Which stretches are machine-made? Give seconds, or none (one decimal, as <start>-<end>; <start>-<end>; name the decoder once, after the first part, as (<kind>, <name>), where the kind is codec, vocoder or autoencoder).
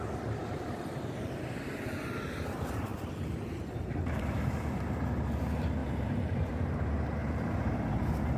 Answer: 2.9-4.4 (vocoder, BigVGAN v2); 5.8-6.5; 7.2-7.7